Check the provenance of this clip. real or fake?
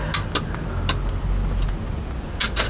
real